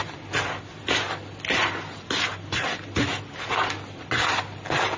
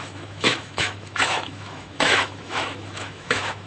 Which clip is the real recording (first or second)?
first